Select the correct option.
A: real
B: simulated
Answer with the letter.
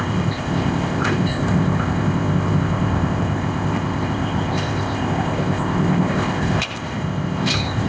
B